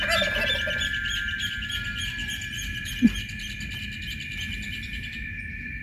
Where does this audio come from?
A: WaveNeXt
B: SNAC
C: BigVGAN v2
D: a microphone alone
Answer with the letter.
D